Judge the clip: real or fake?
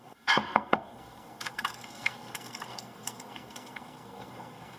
fake